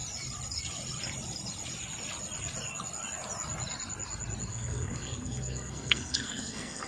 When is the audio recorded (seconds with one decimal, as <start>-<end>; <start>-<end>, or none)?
0.0-4.5